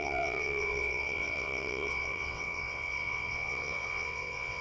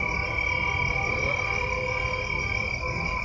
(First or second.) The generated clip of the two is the first